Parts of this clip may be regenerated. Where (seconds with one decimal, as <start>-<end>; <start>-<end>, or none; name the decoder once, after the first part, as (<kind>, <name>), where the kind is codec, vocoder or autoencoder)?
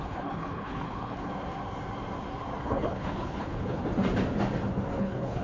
0.0-1.3 (codec, HILCodec); 2.6-3.8; 5.0-5.4